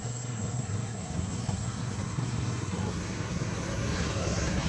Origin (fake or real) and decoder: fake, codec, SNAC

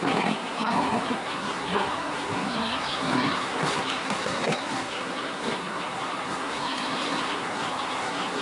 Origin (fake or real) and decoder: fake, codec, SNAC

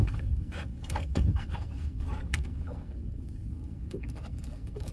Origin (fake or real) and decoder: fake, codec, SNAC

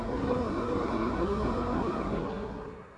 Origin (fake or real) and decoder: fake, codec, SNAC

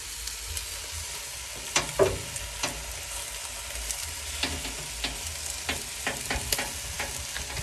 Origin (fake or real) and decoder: real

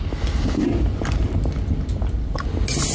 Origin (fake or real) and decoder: real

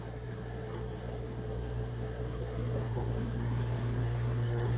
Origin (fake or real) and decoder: fake, codec, SNAC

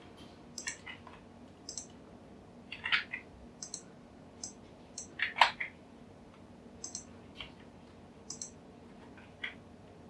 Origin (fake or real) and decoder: real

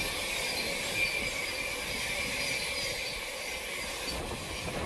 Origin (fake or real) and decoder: real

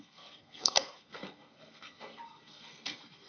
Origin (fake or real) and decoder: fake, codec, SNAC